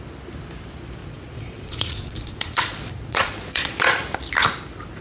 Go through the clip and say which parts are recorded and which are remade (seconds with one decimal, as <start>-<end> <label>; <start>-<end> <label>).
0.0-1.0 recorded; 1.0-4.0 remade; 4.0-5.0 recorded